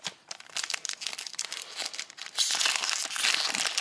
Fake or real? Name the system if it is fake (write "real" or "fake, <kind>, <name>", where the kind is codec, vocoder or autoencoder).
real